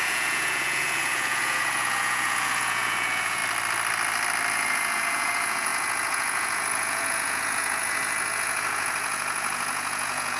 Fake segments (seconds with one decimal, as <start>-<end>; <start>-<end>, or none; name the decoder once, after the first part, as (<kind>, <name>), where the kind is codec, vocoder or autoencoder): 0.0-3.4 (vocoder, Vocos); 4.5-10.4